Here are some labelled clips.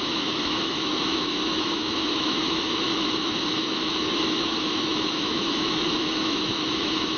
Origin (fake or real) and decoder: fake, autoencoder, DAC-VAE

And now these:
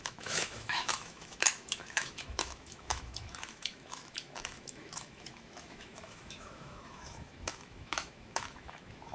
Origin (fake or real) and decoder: fake, autoencoder, DAC-VAE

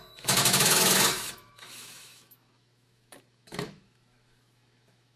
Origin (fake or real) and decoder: fake, autoencoder, DAC-VAE